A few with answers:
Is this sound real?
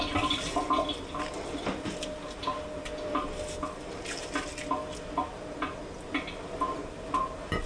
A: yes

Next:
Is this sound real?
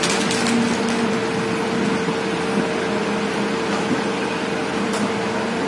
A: yes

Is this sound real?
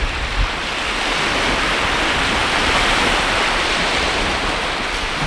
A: yes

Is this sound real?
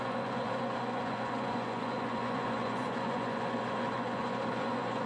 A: no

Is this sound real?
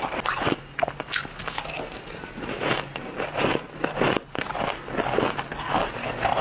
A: yes